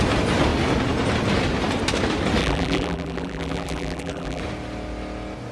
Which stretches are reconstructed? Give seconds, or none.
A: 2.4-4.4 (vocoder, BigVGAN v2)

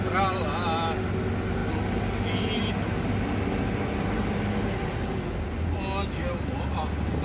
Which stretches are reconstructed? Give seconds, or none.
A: none

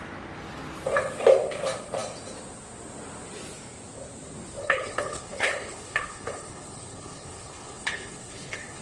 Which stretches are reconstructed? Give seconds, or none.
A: 4.6-8.8 (codec, HILCodec)

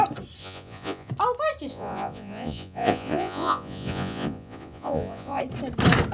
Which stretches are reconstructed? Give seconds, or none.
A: 0.4-1.1 (vocoder, Vocos); 1.7-5.4

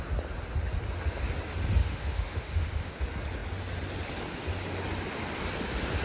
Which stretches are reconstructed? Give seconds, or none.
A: 1.8-3.0 (autoencoder, DAC-VAE)

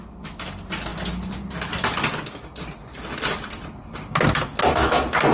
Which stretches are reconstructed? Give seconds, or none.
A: none

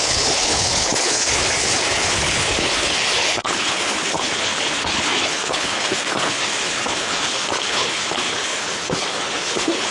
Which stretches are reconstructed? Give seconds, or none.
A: 0.0-9.9 (codec, HILCodec)